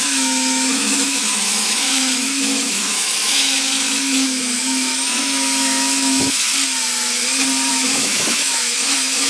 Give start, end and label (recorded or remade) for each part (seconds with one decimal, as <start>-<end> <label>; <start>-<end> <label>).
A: 0.0-6.5 remade; 6.5-7.7 recorded; 7.7-9.3 remade